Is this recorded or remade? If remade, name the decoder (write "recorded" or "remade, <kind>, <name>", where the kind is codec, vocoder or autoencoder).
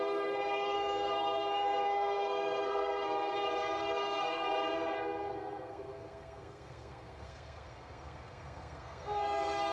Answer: remade, codec, SNAC